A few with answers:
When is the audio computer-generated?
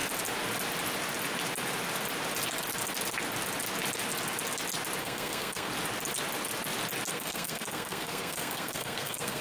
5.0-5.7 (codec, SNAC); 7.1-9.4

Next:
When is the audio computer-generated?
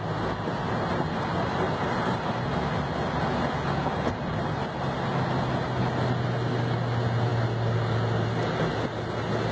none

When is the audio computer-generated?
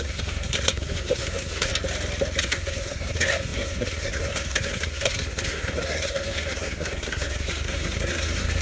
0.0-1.7 (codec, SNAC); 2.4-8.6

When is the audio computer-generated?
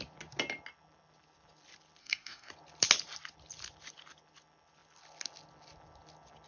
2.0-2.5 (codec, SNAC)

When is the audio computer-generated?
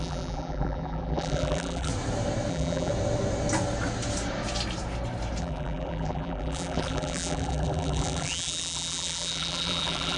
0.0-1.9 (vocoder, BigVGAN v2); 2.5-2.9; 5.4-10.2